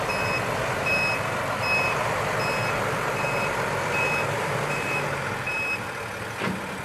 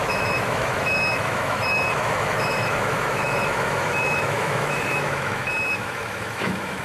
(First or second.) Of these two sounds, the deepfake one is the second